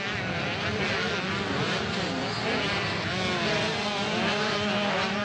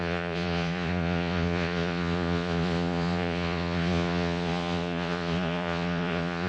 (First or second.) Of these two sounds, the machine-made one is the second